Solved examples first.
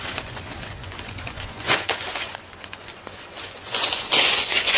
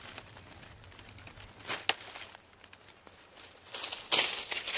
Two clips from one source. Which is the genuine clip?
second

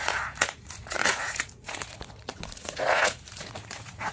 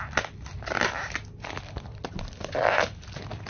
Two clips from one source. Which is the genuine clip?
second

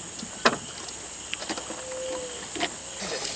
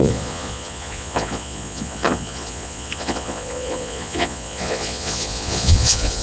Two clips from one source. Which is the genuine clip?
first